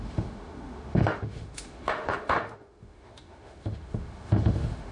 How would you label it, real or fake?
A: fake